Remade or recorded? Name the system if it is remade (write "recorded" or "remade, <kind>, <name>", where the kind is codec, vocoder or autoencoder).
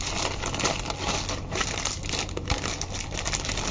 recorded